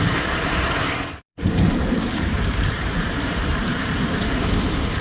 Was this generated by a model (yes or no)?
yes